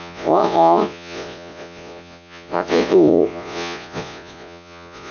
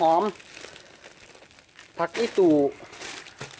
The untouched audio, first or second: second